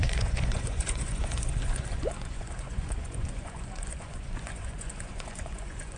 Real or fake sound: fake